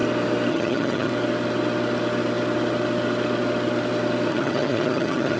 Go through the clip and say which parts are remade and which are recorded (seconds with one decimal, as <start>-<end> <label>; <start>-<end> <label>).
0.0-0.5 recorded; 0.5-1.1 remade; 1.1-4.3 recorded; 4.3-5.4 remade

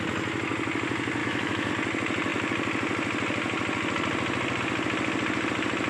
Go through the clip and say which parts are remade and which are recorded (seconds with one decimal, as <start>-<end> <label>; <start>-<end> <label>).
0.0-1.2 recorded; 1.2-1.7 remade; 1.7-5.9 recorded